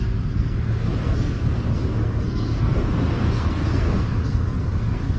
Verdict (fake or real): fake